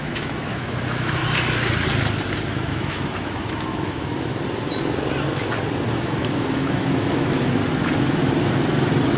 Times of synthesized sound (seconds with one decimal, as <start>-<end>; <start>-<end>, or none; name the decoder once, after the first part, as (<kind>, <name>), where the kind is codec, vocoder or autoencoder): 0.0-1.2 (autoencoder, DAC-VAE); 2.5-4.3; 5.9-7.6